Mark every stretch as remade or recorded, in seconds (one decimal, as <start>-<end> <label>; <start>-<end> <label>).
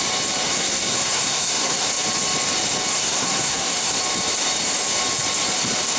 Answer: 0.0-0.5 recorded; 0.5-1.9 remade; 1.9-2.9 recorded; 2.9-4.0 remade; 4.0-6.0 recorded